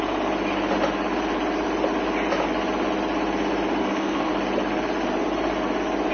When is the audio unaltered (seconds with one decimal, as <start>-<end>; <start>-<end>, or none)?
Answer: 0.0-3.8; 4.3-6.1

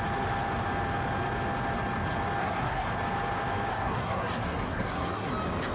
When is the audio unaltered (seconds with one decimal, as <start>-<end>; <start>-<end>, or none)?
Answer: 0.0-2.4; 2.9-3.7; 5.3-5.7

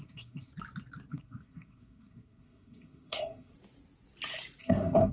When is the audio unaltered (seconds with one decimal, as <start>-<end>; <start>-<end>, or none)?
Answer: 0.5-1.1; 3.5-4.6

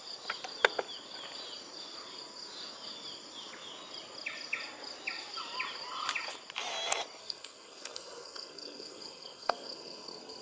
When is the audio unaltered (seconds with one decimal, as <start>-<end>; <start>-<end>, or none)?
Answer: 0.0-7.2